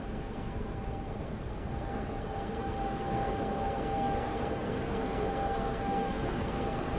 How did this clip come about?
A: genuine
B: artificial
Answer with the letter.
B